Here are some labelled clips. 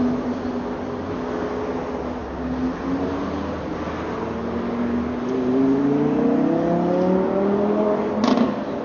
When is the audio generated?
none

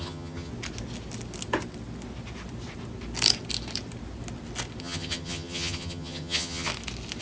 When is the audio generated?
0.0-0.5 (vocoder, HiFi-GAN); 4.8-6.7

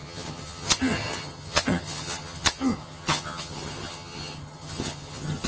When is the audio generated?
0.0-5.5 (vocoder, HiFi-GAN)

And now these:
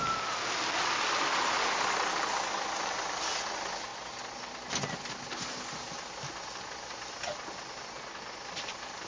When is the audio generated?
none